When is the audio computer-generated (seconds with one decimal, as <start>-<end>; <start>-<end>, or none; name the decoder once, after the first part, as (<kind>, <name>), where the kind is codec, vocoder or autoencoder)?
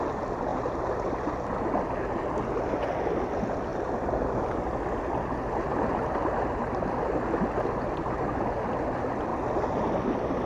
none